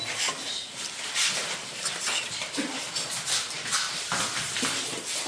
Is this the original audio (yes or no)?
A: yes